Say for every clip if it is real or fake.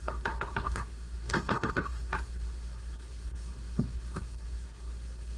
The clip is fake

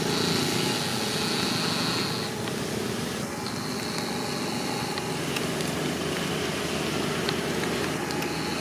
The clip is real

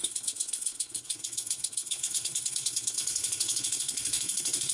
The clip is fake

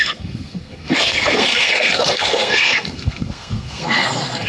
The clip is fake